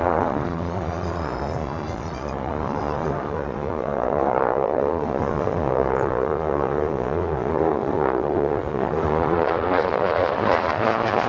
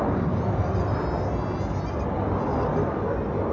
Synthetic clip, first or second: first